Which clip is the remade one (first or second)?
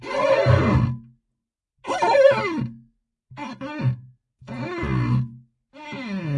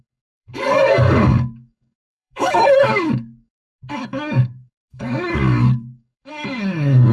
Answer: second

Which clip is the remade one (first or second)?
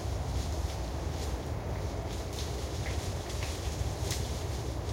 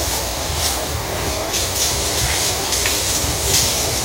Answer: second